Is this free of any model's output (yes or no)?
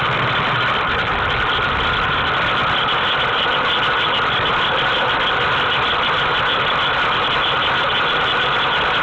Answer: no